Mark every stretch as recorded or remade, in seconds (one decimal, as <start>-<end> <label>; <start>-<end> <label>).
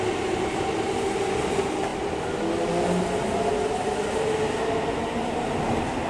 0.0-6.1 recorded